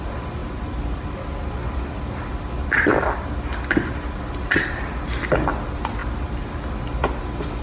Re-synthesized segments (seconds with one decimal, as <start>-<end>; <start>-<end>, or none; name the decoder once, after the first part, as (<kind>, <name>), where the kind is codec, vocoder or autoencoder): 0.4-1.2 (vocoder, BigVGAN v2)